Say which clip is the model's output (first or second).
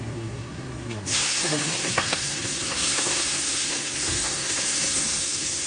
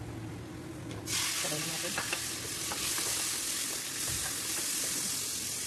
first